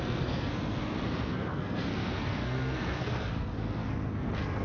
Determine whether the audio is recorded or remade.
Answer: remade